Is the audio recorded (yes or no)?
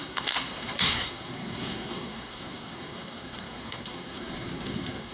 no